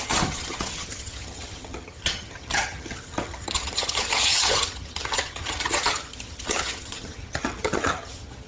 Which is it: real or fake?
fake